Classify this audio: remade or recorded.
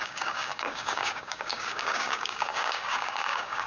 remade